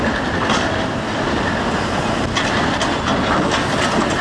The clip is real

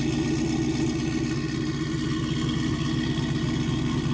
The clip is real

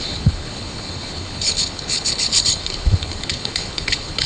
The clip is fake